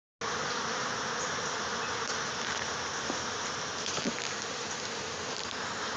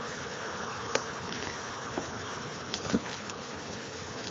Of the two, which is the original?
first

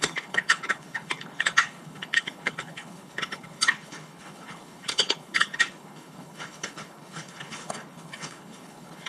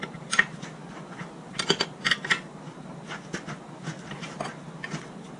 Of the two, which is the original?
second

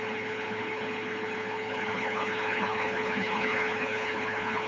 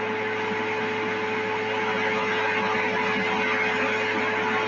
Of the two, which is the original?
second